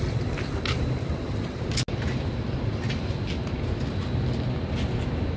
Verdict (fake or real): real